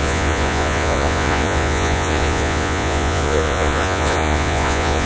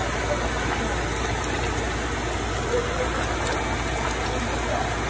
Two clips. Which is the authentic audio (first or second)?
second